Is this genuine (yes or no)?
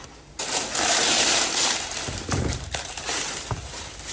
no